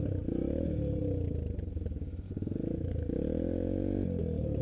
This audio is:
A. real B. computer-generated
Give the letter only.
A